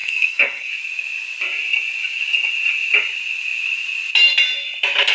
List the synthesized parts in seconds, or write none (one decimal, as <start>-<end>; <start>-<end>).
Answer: 0.0-0.7